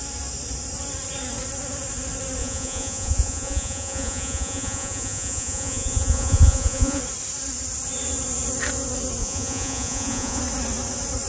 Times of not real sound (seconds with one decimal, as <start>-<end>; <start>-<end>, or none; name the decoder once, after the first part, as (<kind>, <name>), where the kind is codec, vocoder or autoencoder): 2.4-7.0 (vocoder, Vocos); 9.2-10.4